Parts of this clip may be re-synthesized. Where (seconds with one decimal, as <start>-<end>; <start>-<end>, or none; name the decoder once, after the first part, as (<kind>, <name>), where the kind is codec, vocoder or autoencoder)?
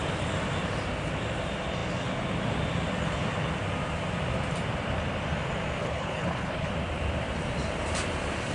5.8-6.7 (codec, HILCodec)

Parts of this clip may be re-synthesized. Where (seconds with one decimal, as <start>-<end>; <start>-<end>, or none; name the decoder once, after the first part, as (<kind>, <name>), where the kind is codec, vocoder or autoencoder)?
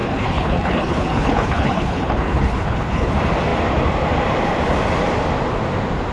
0.0-3.1 (codec, HILCodec)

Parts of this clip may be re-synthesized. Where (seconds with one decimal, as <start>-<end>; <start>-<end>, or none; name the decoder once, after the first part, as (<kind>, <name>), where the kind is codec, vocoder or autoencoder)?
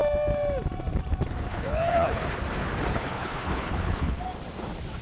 1.5-2.2 (codec, HILCodec); 2.9-4.2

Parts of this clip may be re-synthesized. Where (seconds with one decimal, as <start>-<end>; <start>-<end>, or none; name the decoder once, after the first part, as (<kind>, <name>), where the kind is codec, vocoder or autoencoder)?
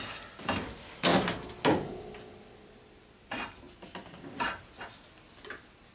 none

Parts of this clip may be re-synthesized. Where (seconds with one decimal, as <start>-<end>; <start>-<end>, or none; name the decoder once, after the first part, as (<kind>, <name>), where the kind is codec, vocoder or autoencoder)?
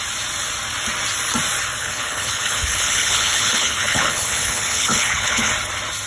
1.8-5.5 (codec, HILCodec)